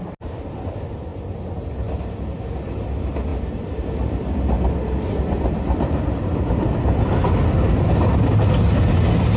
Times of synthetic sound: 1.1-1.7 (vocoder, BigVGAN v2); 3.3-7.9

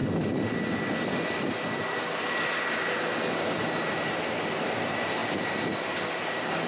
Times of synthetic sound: none

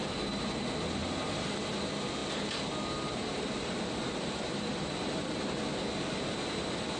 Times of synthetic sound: none

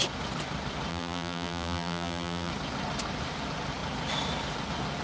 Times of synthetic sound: 0.9-2.5 (vocoder, BigVGAN v2)

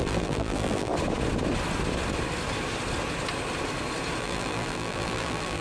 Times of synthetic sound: 0.0-0.9 (vocoder, BigVGAN v2); 4.2-5.6

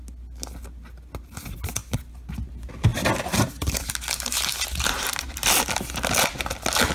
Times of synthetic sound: 2.9-3.9 (vocoder, BigVGAN v2)